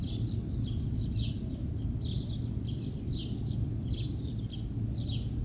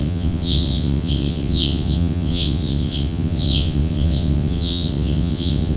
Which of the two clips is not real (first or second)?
second